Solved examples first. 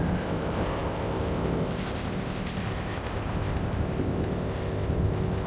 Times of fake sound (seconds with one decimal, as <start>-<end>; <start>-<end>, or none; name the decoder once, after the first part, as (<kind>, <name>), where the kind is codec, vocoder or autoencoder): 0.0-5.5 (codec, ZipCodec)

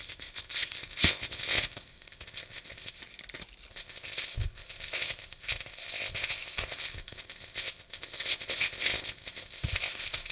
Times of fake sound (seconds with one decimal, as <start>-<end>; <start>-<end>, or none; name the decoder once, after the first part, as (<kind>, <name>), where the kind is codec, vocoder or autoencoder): 0.0-3.0 (codec, ZipCodec); 3.7-10.3

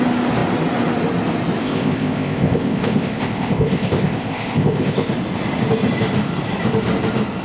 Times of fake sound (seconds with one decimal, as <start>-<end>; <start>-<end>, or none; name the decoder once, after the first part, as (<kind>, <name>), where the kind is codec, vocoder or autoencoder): 1.6-5.1 (codec, ZipCodec)

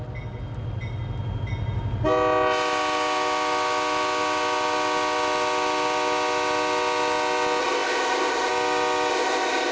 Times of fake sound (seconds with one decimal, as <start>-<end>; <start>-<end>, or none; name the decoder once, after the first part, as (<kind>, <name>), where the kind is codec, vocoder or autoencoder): 7.6-8.5 (codec, ZipCodec); 9.1-9.7

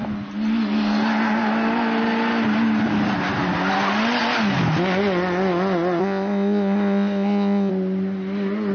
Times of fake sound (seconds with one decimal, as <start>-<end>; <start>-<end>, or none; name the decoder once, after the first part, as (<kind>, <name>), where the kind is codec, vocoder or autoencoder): 6.0-7.7 (codec, ZipCodec)

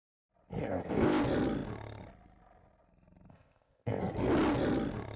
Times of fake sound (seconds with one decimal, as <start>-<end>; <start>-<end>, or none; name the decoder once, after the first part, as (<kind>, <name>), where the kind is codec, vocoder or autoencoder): 0.6-1.2 (codec, ZipCodec); 3.3-4.0